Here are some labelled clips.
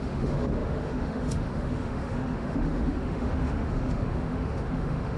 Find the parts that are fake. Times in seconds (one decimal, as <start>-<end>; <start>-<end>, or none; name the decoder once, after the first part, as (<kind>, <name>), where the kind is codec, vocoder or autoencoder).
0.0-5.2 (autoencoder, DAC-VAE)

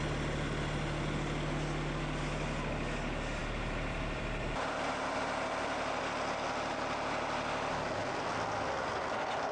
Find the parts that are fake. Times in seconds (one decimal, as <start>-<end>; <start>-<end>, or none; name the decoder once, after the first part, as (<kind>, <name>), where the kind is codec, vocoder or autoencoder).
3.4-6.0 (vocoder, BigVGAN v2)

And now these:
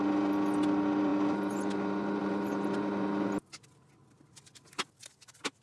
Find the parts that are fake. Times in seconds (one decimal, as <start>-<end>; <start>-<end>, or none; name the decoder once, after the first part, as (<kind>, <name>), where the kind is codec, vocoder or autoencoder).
none